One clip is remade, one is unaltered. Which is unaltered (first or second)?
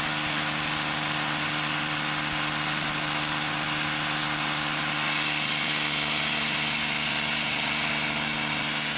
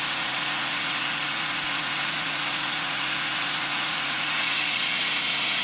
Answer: first